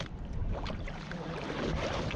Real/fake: fake